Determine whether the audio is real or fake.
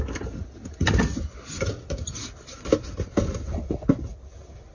real